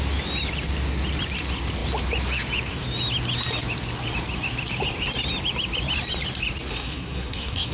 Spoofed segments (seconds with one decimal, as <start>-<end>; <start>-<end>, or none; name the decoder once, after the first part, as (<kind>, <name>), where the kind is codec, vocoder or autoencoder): 6.7-7.7 (codec, SNAC)